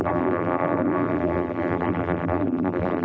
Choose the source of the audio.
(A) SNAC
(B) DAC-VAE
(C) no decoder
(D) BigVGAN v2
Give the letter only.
D